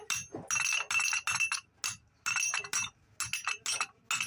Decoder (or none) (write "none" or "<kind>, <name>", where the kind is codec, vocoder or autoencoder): none